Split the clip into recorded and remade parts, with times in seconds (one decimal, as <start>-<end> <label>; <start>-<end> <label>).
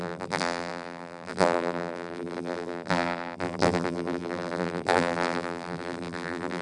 0.0-6.6 remade